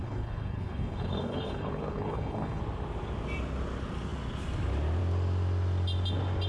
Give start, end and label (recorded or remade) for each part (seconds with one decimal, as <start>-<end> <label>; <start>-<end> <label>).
0.0-2.6 remade; 2.6-6.5 recorded